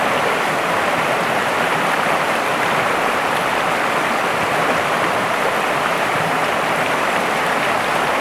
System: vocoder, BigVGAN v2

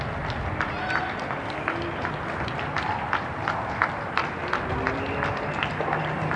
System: none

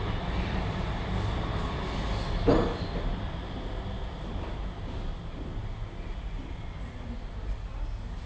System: none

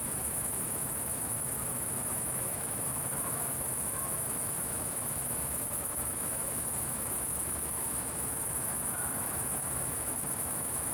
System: autoencoder, DAC-VAE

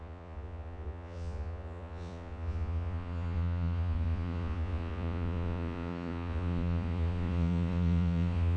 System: vocoder, Vocos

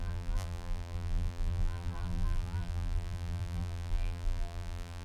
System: vocoder, BigVGAN v2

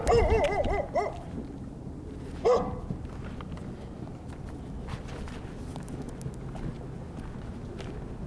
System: none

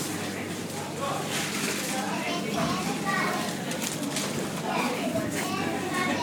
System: none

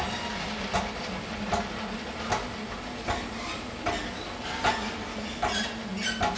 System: none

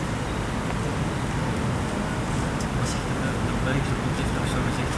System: none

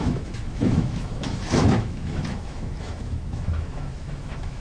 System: autoencoder, DAC-VAE